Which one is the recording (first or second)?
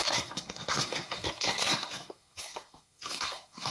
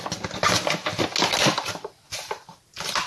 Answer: second